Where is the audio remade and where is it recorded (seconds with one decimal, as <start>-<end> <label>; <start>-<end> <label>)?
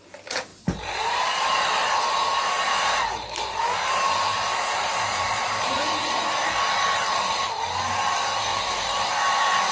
0.0-0.5 recorded; 0.5-5.8 remade; 5.8-8.5 recorded; 8.5-9.2 remade; 9.2-9.7 recorded